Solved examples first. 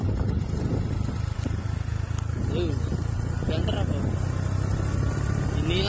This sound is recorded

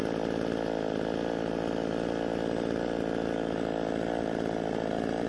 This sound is recorded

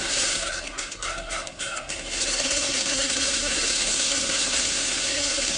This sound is remade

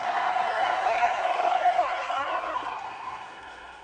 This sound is remade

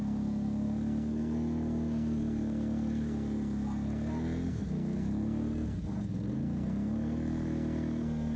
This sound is remade